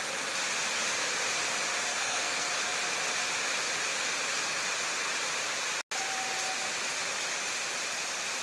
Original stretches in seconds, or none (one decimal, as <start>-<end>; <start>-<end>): 0.0-1.9; 2.5-8.4